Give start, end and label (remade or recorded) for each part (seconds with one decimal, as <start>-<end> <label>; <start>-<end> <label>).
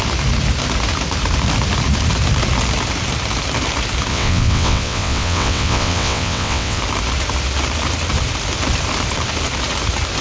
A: 0.0-4.1 recorded; 4.1-6.8 remade; 6.8-10.2 recorded